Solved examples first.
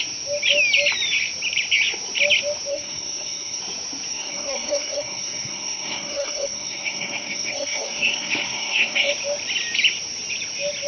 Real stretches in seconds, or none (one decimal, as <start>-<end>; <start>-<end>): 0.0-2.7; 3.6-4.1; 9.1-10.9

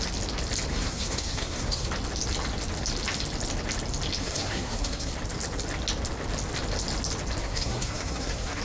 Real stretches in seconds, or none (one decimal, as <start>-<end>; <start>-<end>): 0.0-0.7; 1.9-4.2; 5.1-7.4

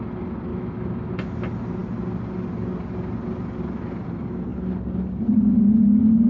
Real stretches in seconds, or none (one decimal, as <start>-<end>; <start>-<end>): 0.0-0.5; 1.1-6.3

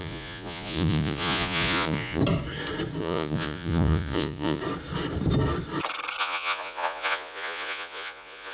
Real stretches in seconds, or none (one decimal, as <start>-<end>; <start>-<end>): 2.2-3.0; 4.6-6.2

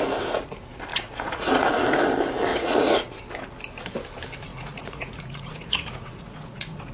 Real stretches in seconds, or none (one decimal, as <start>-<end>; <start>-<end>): 0.0-0.9; 1.7-2.5; 3.2-4.5

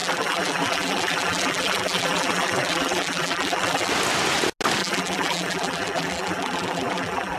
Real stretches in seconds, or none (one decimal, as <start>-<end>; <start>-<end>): 3.9-4.8

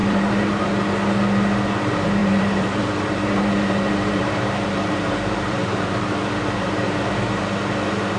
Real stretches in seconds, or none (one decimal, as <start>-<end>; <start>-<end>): 0.6-2.2; 7.1-8.2